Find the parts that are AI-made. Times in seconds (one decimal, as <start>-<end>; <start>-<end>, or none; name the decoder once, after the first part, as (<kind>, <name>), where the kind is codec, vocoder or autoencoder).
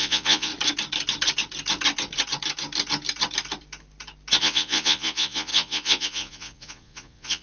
0.0-0.5 (vocoder, Vocos); 4.4-7.4